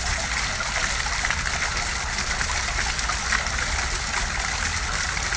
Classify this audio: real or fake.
real